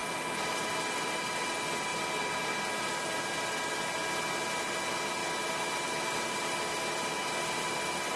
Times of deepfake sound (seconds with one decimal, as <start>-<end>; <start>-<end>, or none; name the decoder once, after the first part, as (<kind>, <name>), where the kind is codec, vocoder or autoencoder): none